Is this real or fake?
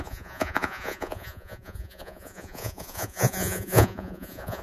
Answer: fake